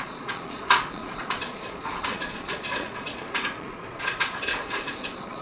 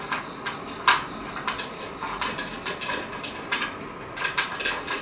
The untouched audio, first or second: second